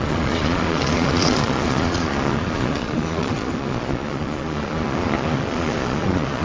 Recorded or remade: remade